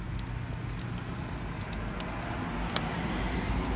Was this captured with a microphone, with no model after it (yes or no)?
yes